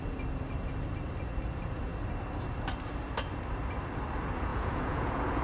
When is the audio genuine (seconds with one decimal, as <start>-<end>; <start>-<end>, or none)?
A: 0.0-4.5